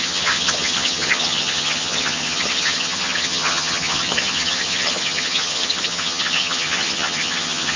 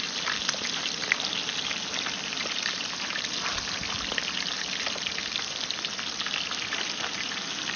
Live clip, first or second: second